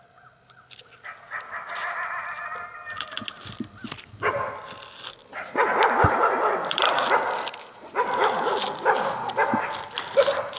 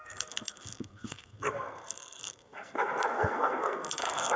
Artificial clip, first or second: second